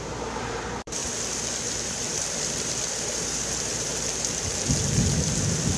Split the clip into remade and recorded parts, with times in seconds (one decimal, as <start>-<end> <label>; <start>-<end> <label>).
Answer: 0.0-1.0 remade; 1.0-1.5 recorded; 1.5-3.9 remade; 3.9-5.2 recorded; 5.2-5.8 remade